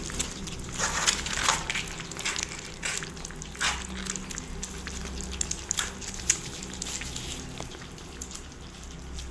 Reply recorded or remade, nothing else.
recorded